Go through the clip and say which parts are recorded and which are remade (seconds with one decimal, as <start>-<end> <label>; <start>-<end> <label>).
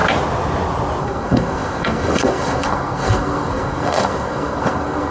0.0-1.0 recorded; 1.0-5.1 remade